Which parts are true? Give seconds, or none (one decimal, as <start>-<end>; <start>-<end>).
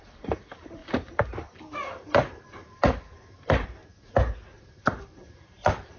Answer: 3.8-4.5